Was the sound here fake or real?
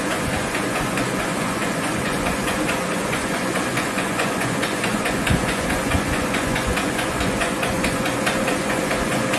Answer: fake